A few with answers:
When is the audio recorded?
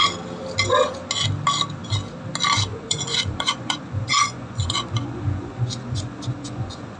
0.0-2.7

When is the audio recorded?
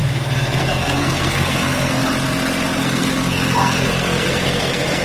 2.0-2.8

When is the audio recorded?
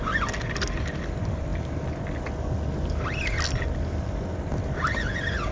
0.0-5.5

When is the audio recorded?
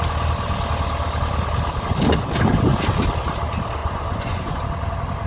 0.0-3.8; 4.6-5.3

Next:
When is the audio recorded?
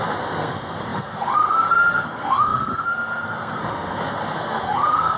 none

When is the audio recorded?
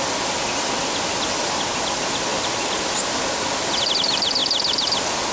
0.0-5.3